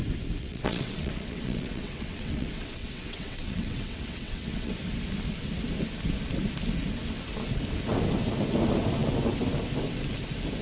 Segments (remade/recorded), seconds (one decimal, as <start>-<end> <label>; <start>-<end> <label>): 0.0-0.4 recorded; 0.4-4.7 remade; 4.7-10.6 recorded